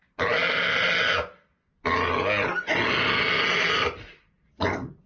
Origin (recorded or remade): recorded